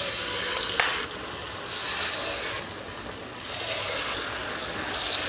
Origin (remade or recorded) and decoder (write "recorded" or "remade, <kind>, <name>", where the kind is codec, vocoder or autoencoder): recorded